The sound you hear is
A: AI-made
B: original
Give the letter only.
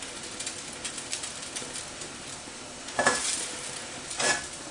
B